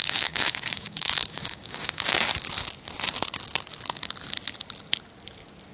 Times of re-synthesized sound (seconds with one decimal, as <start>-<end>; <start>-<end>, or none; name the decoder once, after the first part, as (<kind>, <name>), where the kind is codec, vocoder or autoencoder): 0.0-2.3 (codec, DAC)